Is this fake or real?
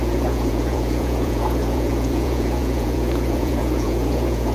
fake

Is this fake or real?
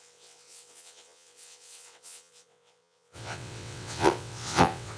fake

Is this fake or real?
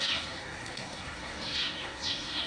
fake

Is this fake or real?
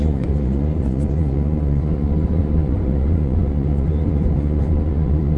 fake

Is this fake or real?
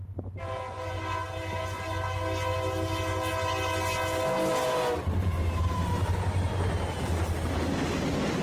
real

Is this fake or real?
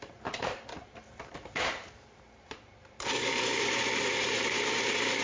fake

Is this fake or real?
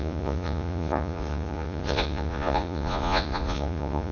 fake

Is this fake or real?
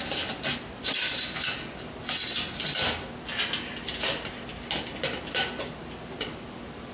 real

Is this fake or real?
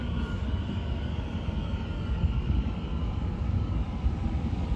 fake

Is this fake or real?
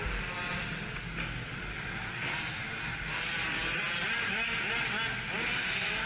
real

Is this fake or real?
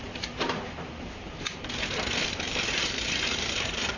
fake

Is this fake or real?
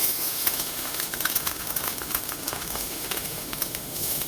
fake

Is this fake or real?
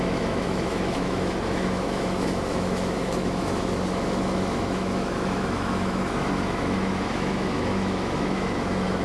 fake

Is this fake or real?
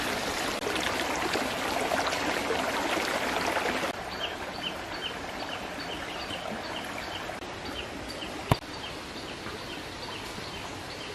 real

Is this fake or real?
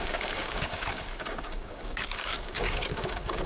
fake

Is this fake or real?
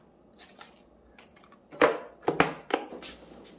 real